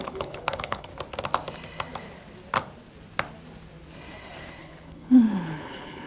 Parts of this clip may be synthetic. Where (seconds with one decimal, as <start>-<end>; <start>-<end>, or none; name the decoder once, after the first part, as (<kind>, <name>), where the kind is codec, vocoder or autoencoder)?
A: 0.0-0.9 (codec, HILCodec); 4.6-6.1